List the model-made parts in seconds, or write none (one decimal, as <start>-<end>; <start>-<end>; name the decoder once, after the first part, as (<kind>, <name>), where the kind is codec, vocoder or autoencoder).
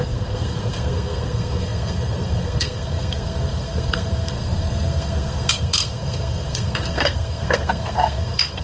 0.0-8.6 (codec, SNAC)